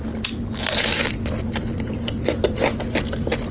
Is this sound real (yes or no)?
yes